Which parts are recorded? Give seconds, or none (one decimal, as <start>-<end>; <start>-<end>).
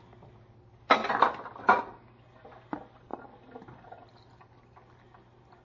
0.0-5.6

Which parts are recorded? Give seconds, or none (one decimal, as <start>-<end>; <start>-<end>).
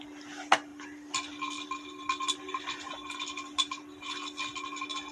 0.0-0.7; 3.8-5.1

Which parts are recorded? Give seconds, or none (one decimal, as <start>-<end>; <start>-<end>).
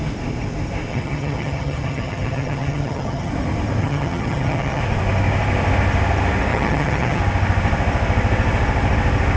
0.0-0.9; 3.3-3.8; 4.8-6.5; 7.2-9.4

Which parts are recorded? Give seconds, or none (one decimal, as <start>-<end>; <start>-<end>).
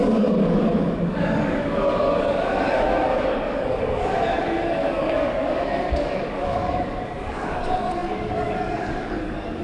none